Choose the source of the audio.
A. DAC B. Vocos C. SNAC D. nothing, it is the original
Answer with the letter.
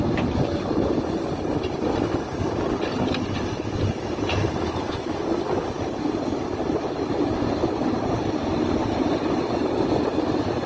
D